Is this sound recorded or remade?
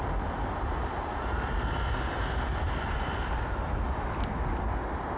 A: recorded